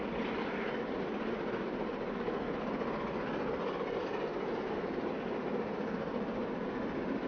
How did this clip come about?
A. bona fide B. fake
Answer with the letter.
A